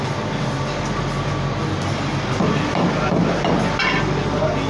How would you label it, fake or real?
real